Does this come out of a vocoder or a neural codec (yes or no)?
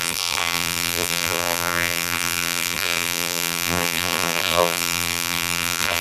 yes